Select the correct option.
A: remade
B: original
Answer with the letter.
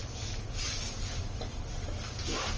B